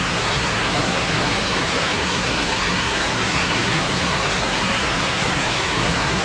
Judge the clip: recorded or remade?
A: remade